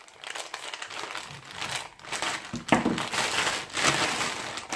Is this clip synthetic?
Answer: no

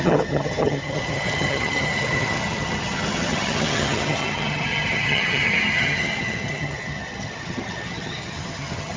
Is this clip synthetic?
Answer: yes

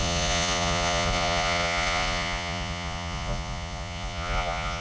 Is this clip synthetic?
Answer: yes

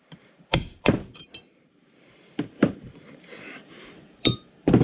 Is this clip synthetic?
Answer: yes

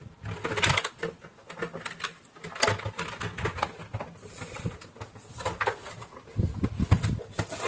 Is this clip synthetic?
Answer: no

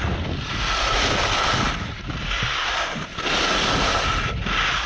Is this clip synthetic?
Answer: no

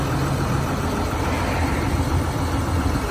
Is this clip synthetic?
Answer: no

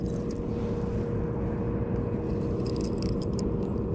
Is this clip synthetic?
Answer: no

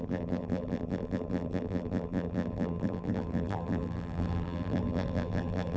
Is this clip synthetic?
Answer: yes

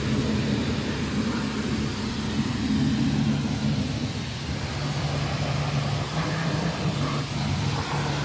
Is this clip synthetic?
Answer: no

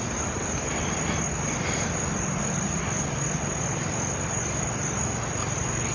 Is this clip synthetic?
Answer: no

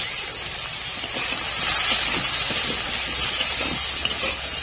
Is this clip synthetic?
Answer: no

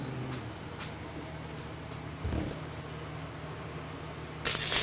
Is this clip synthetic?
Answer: no